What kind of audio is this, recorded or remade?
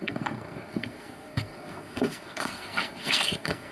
remade